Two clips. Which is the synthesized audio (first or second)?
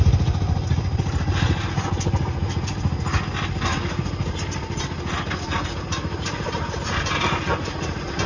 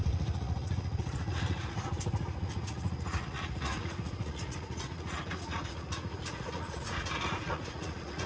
second